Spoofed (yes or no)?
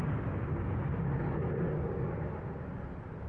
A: no